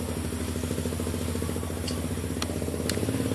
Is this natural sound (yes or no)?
yes